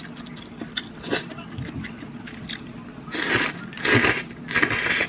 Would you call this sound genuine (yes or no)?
yes